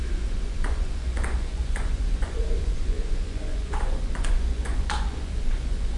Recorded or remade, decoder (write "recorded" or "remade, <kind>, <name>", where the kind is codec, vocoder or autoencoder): remade, vocoder, Vocos